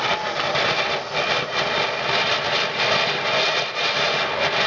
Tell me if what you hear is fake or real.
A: real